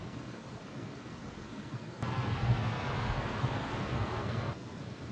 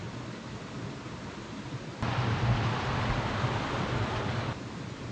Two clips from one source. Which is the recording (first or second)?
second